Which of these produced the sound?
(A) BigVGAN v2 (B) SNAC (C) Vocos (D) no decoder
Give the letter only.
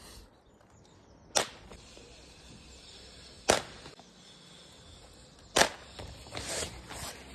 D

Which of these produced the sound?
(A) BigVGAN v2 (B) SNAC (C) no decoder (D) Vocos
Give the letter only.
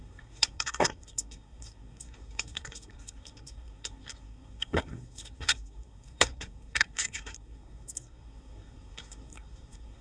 B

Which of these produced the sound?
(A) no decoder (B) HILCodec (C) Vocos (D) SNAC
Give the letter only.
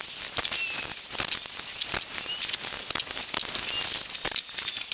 A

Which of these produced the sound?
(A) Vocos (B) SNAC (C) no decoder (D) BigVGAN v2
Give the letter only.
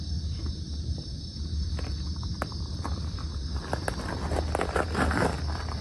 C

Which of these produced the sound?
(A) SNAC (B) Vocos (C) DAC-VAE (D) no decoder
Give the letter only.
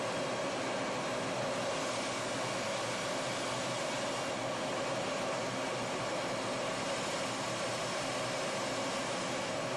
D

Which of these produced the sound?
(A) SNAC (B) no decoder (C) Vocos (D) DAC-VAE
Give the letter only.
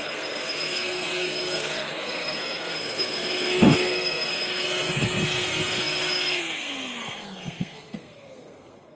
A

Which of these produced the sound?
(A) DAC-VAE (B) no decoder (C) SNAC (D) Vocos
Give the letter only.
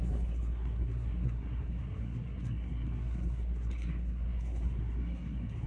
C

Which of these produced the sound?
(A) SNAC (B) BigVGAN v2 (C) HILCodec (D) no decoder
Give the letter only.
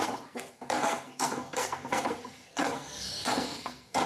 A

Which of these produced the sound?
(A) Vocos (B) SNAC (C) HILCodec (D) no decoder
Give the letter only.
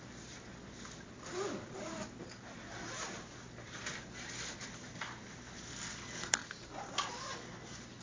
D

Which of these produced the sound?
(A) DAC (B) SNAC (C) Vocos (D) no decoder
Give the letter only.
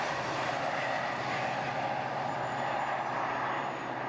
D